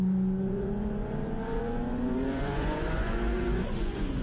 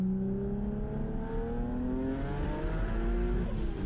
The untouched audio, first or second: second